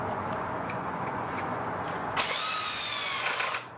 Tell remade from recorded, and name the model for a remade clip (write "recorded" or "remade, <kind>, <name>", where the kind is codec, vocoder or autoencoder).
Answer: remade, vocoder, Vocos